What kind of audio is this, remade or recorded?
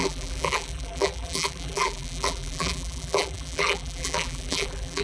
remade